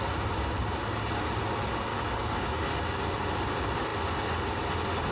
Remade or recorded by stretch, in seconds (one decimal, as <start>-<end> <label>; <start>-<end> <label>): 0.0-1.9 recorded; 1.9-2.6 remade; 2.6-5.1 recorded